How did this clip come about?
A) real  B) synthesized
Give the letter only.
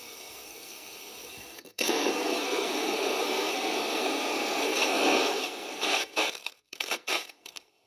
B